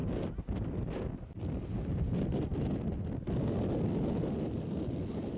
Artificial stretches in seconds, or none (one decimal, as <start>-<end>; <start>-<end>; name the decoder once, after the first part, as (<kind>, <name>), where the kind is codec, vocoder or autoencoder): none